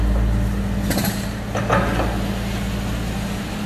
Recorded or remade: recorded